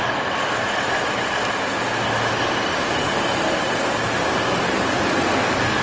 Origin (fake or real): real